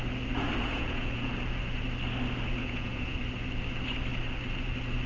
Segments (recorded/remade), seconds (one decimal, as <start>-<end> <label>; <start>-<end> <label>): 0.0-0.6 recorded; 0.6-1.3 remade; 1.3-2.6 recorded; 2.6-3.2 remade; 3.2-5.1 recorded